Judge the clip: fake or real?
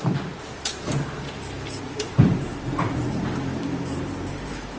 fake